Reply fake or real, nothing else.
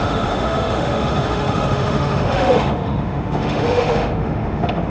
fake